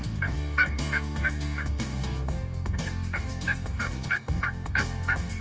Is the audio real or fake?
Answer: fake